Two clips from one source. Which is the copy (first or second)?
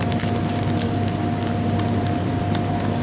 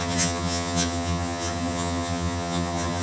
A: second